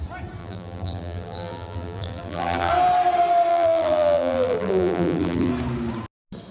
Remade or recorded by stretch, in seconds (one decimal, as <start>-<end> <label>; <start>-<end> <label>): 0.0-0.4 recorded; 0.4-2.7 remade; 2.7-3.5 recorded; 3.5-5.5 remade; 5.5-6.5 recorded